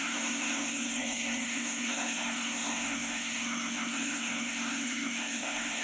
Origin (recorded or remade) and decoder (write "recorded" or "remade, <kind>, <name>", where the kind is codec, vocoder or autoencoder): remade, codec, SNAC